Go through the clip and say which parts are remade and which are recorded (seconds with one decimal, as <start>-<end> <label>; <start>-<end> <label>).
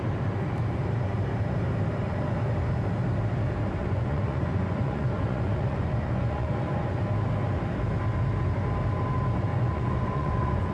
0.0-3.8 recorded; 3.8-7.0 remade; 7.0-9.5 recorded; 9.5-10.7 remade